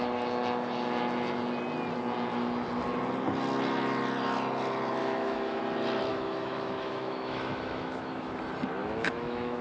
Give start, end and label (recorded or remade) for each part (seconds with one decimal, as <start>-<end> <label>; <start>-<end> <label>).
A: 0.0-5.0 recorded; 5.0-5.6 remade; 5.6-6.1 recorded; 6.1-8.4 remade; 8.4-8.8 recorded; 8.8-9.6 remade